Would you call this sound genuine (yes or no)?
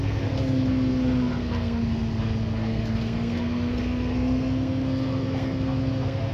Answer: no